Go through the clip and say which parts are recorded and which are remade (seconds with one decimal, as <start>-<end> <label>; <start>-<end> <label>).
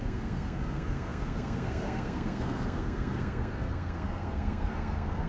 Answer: 0.0-5.3 remade